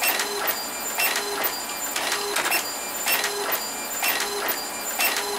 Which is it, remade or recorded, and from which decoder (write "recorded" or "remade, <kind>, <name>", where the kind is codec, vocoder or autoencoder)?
recorded